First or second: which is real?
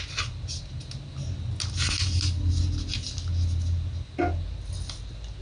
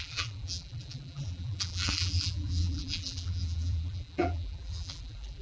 first